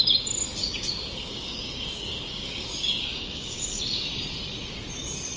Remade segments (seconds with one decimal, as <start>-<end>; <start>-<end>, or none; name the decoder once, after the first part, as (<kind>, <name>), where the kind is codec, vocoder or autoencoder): 0.6-3.8 (codec, DAC)